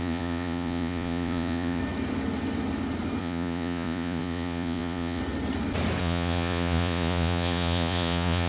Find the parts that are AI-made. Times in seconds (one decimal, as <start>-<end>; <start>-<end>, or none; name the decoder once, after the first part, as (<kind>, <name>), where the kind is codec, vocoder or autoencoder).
0.0-1.8 (vocoder, Vocos); 3.2-5.2; 6.0-8.5

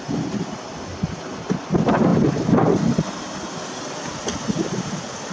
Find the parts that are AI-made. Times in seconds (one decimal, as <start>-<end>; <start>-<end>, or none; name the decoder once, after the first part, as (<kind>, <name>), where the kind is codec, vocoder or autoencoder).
none